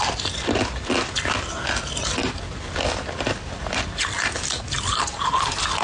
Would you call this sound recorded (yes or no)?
yes